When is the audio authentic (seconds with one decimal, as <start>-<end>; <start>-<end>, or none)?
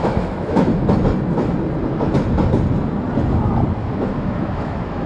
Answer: 0.7-3.8